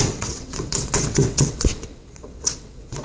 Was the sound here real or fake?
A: fake